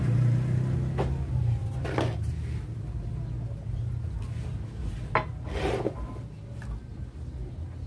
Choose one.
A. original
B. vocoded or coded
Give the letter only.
A